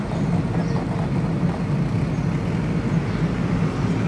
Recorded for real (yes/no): yes